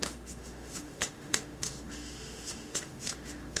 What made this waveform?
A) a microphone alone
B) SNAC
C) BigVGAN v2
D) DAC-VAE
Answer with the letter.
D